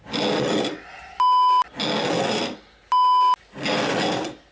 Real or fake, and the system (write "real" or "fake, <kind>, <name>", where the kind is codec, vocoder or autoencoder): real